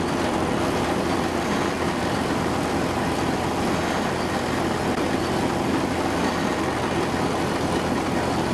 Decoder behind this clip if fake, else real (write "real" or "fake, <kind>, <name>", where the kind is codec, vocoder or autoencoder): real